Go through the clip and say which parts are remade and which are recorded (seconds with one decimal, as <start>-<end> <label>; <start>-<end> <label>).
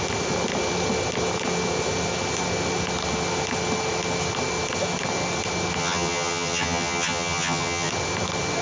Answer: 0.0-5.8 recorded; 5.8-7.9 remade; 7.9-8.6 recorded